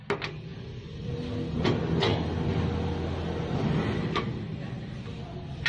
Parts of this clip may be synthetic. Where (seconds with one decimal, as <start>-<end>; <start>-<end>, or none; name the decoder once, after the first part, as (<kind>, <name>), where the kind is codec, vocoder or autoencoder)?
0.5-1.1 (vocoder, BigVGAN v2)